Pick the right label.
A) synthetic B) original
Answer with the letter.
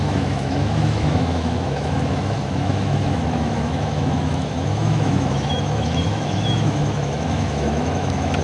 A